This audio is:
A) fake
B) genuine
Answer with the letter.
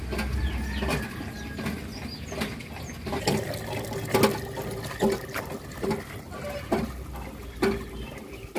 B